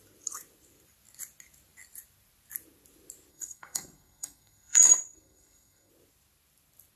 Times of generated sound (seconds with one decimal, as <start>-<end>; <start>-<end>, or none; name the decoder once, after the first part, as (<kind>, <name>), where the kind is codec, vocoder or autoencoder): 3.3-5.9 (codec, SNAC)